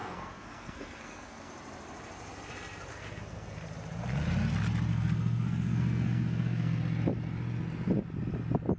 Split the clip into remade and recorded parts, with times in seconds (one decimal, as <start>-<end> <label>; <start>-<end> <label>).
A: 0.0-1.5 remade; 1.5-2.9 recorded; 2.9-3.6 remade; 3.6-4.9 recorded; 4.9-6.8 remade; 6.8-8.8 recorded